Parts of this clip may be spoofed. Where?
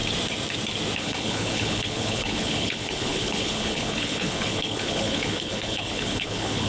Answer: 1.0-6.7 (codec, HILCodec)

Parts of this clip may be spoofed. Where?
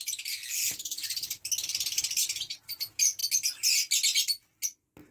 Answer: none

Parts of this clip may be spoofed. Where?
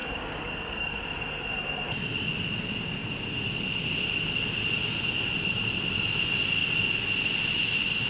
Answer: 0.0-1.0 (codec, DAC)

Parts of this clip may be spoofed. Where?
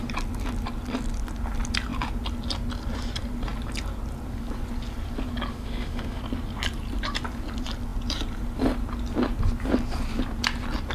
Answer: 5.5-6.2 (autoencoder, DAC-VAE)